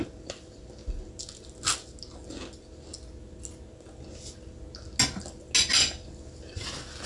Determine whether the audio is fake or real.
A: real